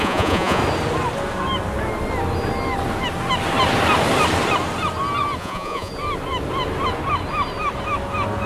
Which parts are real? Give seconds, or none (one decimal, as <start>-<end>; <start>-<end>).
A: 0.6-5.4; 5.9-8.5